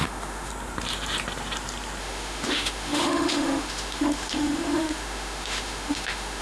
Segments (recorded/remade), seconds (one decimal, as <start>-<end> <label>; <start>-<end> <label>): 0.0-0.5 remade; 0.5-2.0 recorded; 2.0-6.4 remade